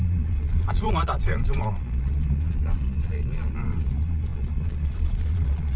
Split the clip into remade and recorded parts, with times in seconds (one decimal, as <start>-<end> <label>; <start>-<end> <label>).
0.0-5.8 remade